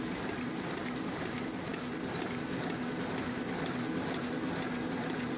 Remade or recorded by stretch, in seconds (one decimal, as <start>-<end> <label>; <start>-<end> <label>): 0.0-5.4 recorded